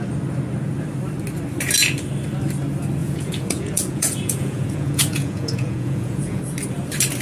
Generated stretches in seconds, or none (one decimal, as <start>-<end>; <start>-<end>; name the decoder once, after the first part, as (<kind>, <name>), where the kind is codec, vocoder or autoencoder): 3.0-6.4 (vocoder, Vocos)